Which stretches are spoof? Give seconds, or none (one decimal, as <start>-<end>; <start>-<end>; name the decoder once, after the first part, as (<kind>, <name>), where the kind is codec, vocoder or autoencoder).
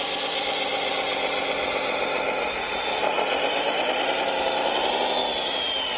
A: none